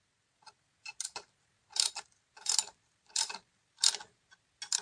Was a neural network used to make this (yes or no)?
no